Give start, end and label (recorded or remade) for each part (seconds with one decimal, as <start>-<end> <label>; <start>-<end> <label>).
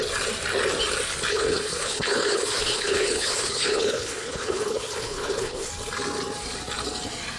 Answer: 0.0-1.3 recorded; 1.3-5.7 remade; 5.7-7.4 recorded